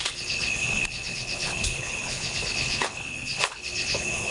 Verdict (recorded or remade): remade